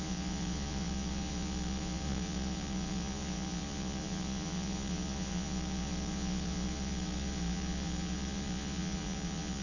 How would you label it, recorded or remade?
remade